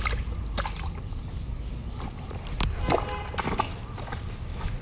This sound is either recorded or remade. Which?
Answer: recorded